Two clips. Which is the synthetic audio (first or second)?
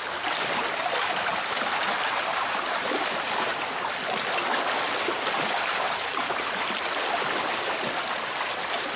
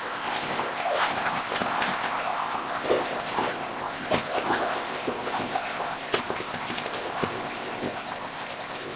second